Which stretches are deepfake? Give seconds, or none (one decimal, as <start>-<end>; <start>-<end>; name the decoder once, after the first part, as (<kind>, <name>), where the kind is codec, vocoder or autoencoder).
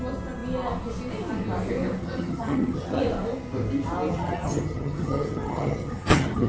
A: 2.0-3.0 (vocoder, HiFi-GAN); 4.1-6.5